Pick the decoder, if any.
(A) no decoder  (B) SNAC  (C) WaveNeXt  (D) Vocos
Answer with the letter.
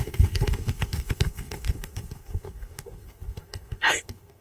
B